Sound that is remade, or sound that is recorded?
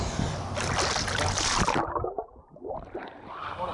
recorded